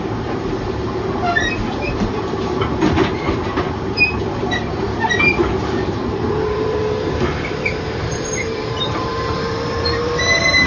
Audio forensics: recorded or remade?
remade